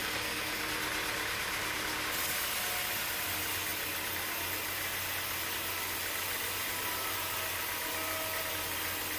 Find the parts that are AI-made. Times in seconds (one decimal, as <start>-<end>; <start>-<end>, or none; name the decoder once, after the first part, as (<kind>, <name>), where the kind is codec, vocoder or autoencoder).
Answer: 0.0-0.6 (codec, SNAC)